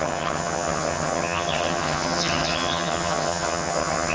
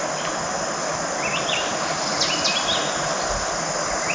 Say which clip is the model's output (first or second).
first